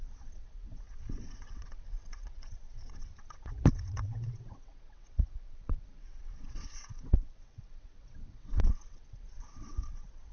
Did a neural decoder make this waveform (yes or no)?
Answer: yes